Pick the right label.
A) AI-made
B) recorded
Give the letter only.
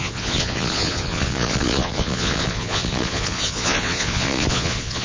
A